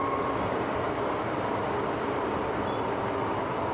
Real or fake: real